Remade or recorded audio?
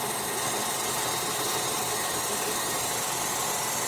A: recorded